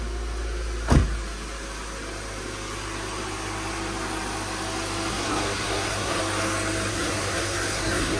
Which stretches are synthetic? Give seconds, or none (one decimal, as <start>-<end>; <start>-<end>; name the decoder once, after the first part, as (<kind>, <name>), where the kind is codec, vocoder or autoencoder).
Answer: 5.1-6.2 (codec, SNAC); 6.9-8.2